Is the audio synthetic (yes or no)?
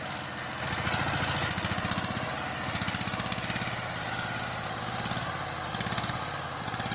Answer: no